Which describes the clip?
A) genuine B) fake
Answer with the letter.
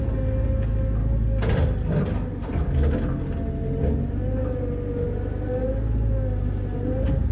A